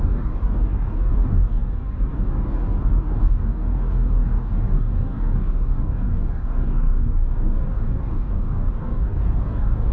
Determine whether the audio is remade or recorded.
remade